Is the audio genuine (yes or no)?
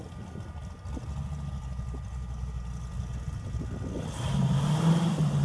yes